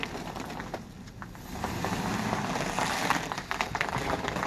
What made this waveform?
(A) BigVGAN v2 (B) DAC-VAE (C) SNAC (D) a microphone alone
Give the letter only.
D